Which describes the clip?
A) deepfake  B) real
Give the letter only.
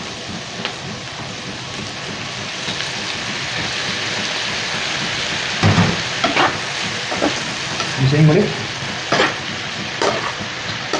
B